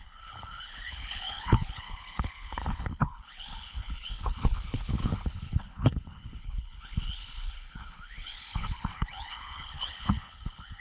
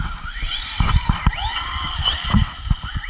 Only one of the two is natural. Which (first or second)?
second